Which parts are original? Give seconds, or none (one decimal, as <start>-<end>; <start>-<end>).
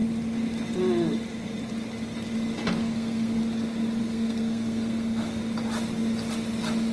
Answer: 0.0-2.8; 3.4-4.0; 5.4-6.9